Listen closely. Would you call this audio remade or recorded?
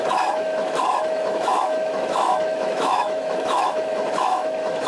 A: remade